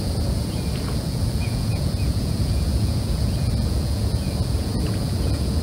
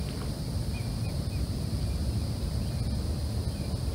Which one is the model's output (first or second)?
first